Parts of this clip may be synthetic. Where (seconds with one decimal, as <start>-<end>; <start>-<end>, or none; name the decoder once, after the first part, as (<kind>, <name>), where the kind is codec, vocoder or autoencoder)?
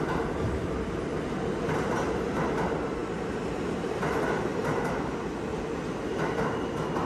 none